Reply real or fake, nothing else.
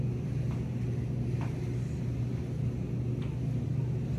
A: real